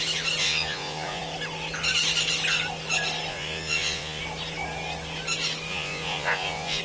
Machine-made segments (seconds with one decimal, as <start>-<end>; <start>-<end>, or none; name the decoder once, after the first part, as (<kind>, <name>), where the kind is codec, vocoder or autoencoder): 0.4-1.2 (vocoder, Vocos); 3.3-4.2; 5.7-6.8